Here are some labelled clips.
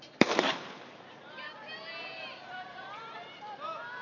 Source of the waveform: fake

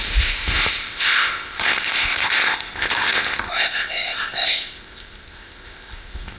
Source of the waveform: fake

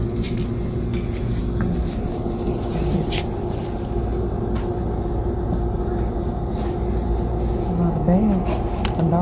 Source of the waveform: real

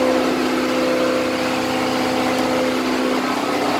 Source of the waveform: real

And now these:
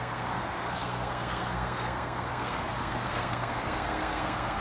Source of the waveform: fake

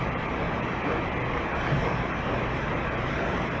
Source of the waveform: real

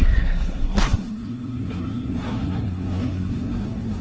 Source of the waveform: fake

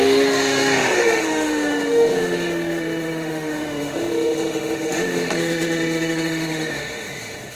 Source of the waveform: fake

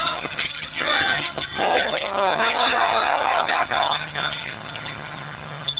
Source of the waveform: fake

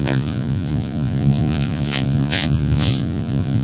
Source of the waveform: fake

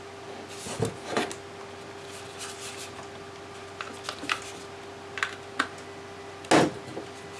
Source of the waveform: real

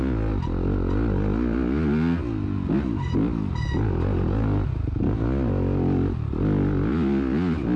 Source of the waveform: real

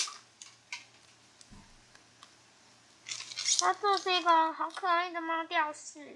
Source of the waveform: real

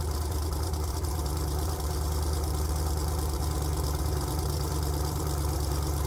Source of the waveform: fake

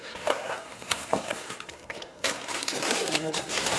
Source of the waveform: fake